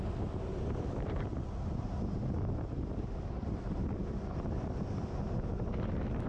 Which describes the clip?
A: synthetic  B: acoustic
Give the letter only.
B